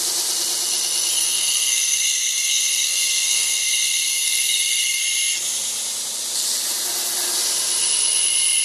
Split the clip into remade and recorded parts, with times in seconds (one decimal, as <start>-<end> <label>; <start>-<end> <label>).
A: 0.0-1.1 recorded; 1.1-5.0 remade; 5.0-8.6 recorded